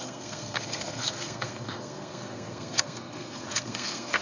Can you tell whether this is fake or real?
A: fake